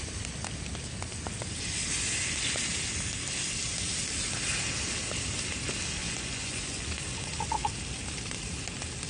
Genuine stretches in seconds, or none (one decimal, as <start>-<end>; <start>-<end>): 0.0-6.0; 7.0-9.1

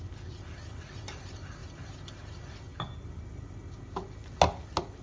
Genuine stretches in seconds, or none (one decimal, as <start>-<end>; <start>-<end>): 0.0-5.0

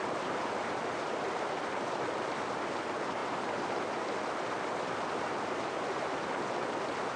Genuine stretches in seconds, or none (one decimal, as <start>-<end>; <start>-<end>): 0.0-7.2

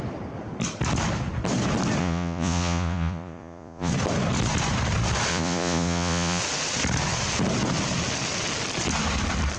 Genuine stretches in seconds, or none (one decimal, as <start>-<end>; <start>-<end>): 0.0-2.0; 3.9-5.3; 6.4-9.6

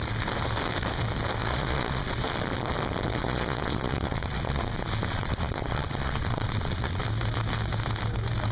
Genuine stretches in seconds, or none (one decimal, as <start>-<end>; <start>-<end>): 0.0-1.4; 2.1-3.2; 4.6-5.1; 7.0-8.5